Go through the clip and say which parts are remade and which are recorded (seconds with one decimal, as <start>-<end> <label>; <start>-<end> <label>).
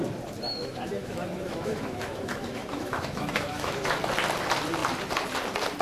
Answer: 0.0-0.5 recorded; 0.5-4.0 remade; 4.0-5.8 recorded